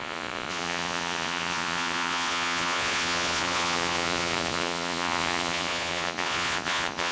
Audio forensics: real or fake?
fake